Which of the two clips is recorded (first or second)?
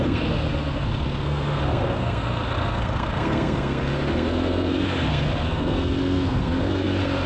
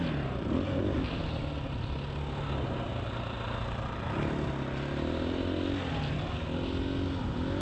second